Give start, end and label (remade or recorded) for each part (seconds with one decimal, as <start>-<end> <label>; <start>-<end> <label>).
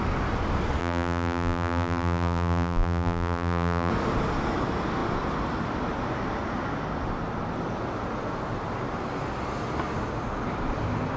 0.0-0.8 recorded; 0.8-3.9 remade; 3.9-11.2 recorded